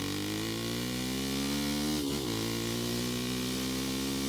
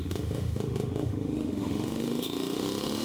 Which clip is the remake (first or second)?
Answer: second